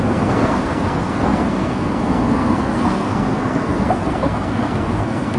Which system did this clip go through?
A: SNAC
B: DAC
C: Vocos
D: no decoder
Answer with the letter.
A